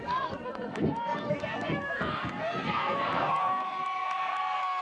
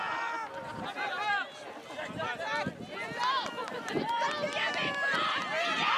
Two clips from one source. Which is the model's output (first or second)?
first